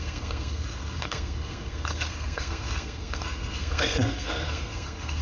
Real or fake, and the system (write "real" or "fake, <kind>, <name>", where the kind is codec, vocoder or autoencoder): fake, codec, SNAC